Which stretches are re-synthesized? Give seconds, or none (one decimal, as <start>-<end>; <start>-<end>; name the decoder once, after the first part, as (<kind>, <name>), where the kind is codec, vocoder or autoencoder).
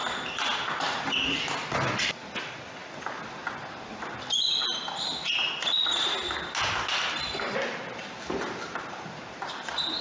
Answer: none